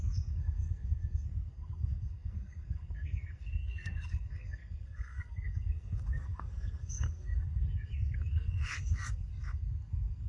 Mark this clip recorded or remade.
remade